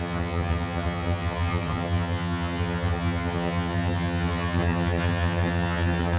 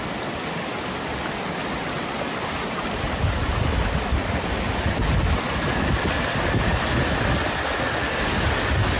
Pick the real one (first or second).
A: second